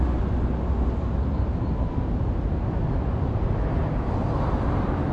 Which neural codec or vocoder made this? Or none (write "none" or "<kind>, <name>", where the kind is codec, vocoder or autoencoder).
none